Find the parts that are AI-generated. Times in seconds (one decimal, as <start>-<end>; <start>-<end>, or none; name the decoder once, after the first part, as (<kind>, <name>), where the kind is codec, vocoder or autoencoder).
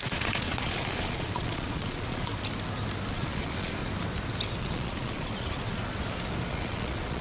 0.0-2.3 (vocoder, Vocos); 3.1-3.8; 4.6-5.9; 6.5-7.2